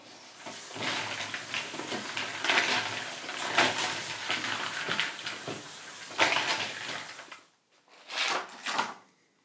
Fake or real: real